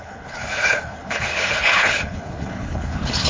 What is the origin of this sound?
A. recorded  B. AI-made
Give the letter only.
B